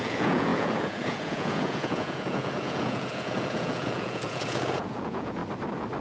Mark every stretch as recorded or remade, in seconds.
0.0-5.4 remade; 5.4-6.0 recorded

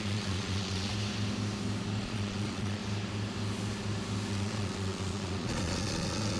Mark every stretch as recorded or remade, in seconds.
0.0-0.9 remade; 0.9-2.0 recorded; 2.0-2.8 remade; 2.8-4.3 recorded; 4.3-6.4 remade

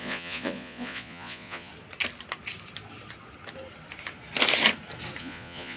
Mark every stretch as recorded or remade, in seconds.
0.0-1.7 remade; 1.7-5.2 recorded; 5.2-5.8 remade